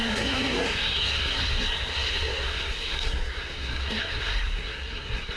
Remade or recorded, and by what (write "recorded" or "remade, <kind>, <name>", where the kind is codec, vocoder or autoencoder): remade, codec, SNAC